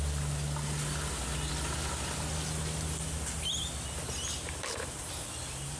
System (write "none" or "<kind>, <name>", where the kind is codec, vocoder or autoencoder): none